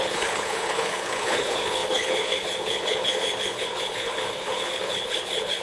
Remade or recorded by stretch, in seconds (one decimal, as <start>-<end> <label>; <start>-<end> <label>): 0.0-5.6 remade